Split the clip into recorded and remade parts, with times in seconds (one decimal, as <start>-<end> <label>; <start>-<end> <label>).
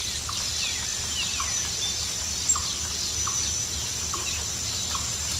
0.0-5.4 recorded